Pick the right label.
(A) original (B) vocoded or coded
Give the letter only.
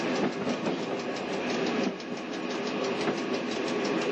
A